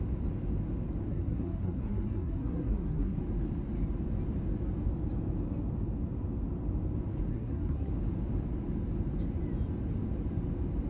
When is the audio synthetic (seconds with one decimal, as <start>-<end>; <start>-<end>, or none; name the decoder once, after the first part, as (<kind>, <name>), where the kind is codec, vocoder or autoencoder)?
1.1-3.2 (codec, SNAC); 7.3-7.9